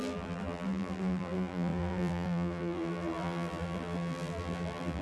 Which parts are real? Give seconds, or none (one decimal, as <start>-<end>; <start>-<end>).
none